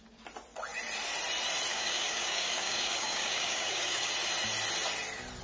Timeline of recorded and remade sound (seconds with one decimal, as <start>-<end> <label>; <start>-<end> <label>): 0.0-1.7 recorded; 1.7-4.1 remade; 4.1-5.4 recorded